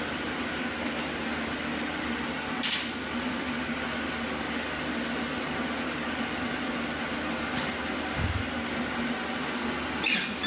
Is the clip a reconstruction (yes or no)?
no